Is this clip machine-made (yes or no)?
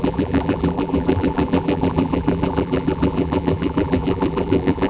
yes